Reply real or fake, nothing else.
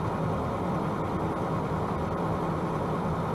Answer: fake